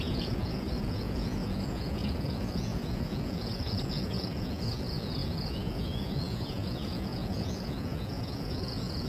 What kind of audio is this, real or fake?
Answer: fake